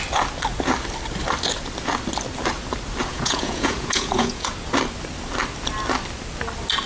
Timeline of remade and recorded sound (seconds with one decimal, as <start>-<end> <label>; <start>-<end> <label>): 0.0-3.1 recorded; 3.1-4.5 remade; 4.5-6.9 recorded